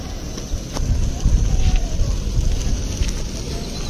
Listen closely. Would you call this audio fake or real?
real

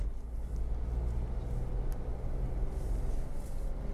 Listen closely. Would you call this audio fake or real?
real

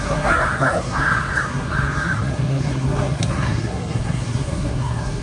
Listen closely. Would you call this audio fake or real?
fake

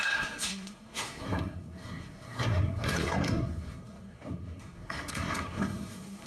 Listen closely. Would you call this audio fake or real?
fake